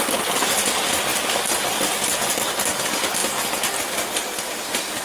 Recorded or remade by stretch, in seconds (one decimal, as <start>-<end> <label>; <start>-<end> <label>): 0.0-5.0 recorded